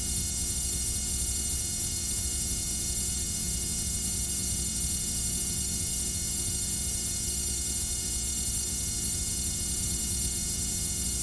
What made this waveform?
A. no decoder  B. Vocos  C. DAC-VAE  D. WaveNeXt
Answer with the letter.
D